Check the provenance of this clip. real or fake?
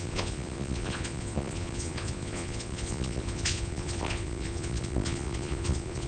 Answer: fake